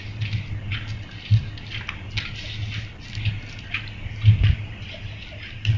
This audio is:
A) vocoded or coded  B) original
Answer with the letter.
B